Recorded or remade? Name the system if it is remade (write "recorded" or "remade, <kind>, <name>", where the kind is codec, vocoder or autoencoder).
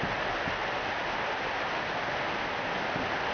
recorded